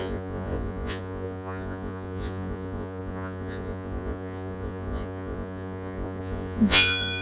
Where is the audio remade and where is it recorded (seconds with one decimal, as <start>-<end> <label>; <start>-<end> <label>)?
0.0-7.2 remade